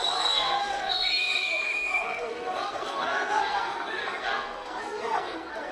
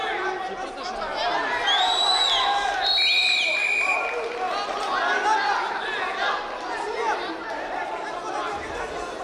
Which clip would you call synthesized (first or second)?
first